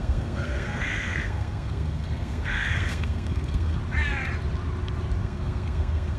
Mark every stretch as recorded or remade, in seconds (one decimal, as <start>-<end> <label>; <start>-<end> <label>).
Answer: 0.0-3.8 remade; 3.8-5.2 recorded; 5.2-6.2 remade